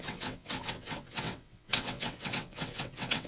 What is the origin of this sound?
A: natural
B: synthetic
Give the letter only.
B